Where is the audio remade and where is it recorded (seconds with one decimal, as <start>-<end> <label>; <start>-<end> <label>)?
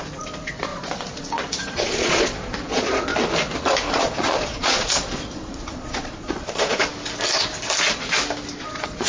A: 0.0-3.1 remade; 3.1-3.9 recorded; 3.9-6.9 remade; 6.9-8.5 recorded; 8.5-9.1 remade